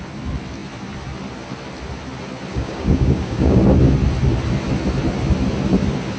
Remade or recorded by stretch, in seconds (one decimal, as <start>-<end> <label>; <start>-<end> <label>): 0.0-2.5 recorded; 2.5-3.6 remade; 3.6-6.2 recorded